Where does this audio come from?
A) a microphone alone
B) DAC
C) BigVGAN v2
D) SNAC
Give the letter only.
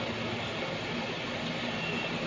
A